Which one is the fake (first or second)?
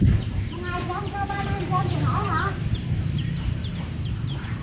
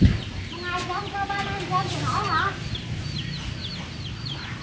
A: first